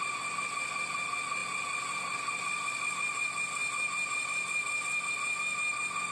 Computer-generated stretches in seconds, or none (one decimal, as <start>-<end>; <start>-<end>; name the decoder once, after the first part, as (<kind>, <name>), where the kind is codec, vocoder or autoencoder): none